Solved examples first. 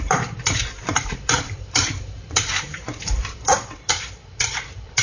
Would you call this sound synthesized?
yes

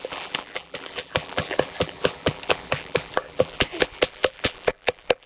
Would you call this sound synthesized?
yes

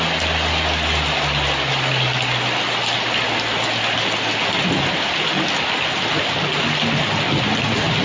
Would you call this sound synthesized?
no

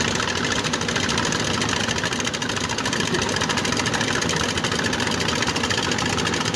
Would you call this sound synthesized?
no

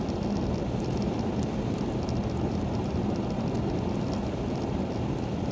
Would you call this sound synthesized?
no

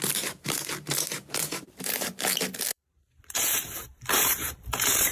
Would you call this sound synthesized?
yes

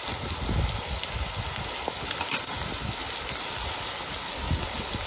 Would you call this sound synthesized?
no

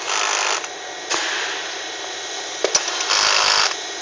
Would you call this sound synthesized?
no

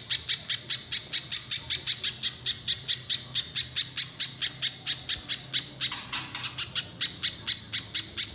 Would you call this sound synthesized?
no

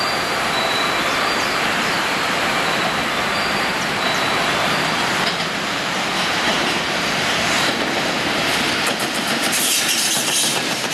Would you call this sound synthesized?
yes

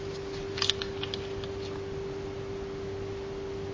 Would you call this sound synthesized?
no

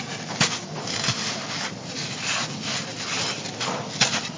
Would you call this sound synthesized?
no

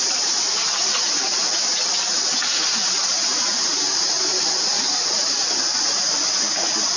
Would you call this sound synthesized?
no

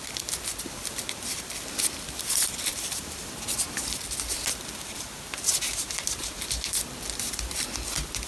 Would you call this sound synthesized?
yes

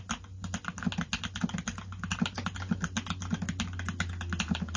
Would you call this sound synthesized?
no